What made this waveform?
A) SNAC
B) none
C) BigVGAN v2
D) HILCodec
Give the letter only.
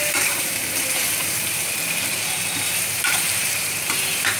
C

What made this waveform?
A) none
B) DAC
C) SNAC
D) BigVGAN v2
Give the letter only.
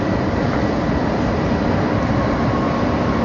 D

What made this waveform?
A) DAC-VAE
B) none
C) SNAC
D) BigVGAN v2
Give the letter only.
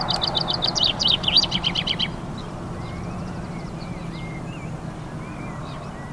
B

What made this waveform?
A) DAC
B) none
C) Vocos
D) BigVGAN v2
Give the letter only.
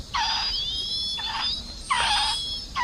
B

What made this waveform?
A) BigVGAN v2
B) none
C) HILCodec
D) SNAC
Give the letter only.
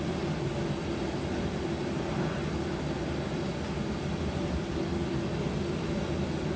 B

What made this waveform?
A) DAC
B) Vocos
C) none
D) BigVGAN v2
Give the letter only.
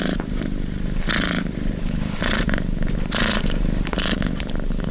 D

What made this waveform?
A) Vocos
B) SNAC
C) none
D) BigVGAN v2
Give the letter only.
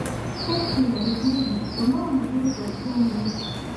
C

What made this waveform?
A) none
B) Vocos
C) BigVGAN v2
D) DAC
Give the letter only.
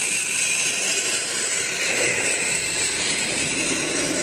C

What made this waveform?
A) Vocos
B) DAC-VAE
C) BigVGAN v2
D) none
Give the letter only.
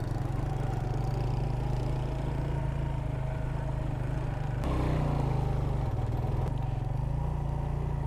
D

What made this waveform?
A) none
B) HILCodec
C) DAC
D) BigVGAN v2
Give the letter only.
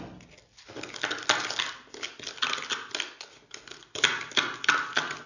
A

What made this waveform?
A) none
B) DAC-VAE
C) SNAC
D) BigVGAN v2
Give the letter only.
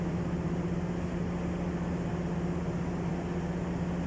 A